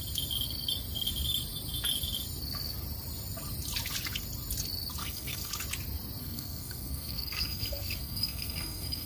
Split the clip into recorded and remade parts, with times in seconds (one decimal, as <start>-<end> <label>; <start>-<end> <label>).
0.0-5.0 recorded; 5.0-5.5 remade; 5.5-6.2 recorded; 6.2-9.1 remade